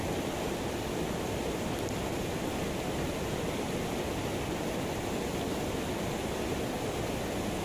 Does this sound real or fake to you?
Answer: real